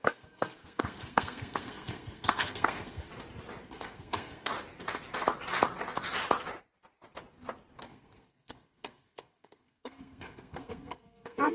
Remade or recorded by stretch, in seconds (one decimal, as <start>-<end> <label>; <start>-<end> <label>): 0.0-3.1 remade; 3.1-3.7 recorded; 3.7-4.5 remade; 4.5-7.8 recorded; 7.8-11.5 remade